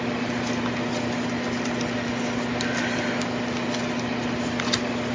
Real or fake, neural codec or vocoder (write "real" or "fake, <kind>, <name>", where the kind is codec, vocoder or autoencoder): real